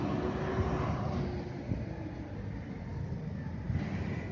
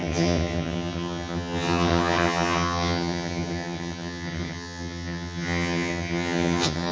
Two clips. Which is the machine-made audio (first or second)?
second